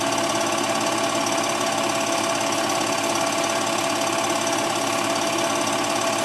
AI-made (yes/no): no